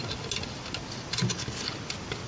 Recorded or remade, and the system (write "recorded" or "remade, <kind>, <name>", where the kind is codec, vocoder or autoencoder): recorded